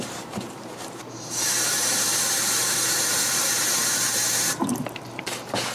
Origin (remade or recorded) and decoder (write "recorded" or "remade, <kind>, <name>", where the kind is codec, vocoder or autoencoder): remade, vocoder, BigVGAN v2